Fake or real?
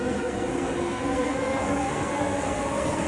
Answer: fake